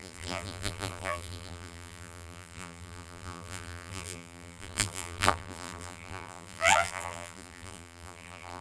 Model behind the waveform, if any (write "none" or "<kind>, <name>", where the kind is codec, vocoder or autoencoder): vocoder, BigVGAN v2